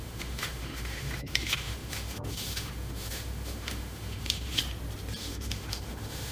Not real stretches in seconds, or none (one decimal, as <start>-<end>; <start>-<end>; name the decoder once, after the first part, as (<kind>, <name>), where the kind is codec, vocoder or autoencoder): 0.0-4.6 (autoencoder, DAC-VAE); 5.2-6.3